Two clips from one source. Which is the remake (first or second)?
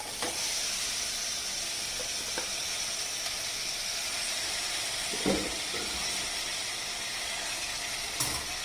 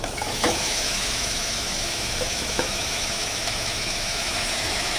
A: second